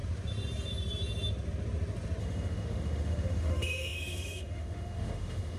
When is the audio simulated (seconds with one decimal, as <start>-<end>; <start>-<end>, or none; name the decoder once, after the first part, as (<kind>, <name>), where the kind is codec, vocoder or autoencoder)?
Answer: 2.2-5.6 (autoencoder, DAC-VAE)